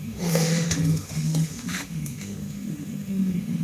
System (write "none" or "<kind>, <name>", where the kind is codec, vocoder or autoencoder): autoencoder, DAC-VAE